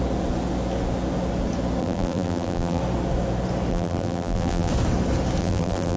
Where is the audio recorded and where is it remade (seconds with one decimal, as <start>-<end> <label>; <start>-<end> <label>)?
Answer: 0.0-1.8 recorded; 1.8-2.8 remade; 2.8-3.7 recorded; 3.7-4.7 remade; 4.7-5.4 recorded; 5.4-6.0 remade